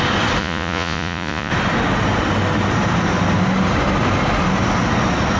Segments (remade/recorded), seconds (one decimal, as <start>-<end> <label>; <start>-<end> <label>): 0.0-0.4 recorded; 0.4-1.5 remade; 1.5-5.4 recorded